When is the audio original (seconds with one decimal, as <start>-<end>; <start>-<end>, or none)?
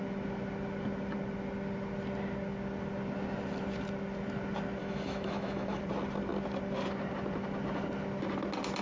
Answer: 0.0-4.8; 5.8-8.8